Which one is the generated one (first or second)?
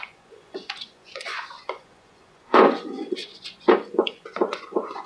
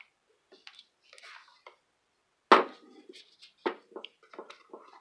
first